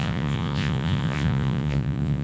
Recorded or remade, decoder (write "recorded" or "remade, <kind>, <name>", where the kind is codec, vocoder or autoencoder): remade, vocoder, Vocos